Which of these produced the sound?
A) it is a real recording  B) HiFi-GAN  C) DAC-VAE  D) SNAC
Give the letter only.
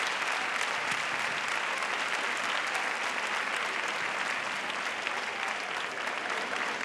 A